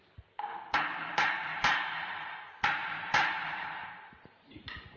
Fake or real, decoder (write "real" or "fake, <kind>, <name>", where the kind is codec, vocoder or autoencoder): fake, vocoder, BigVGAN v2